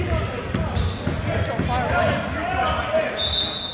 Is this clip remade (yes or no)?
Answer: no